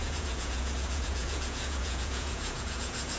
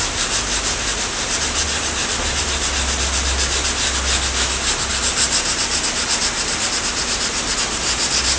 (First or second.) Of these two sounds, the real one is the second